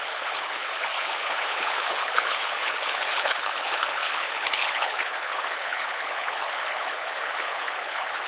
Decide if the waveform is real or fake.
fake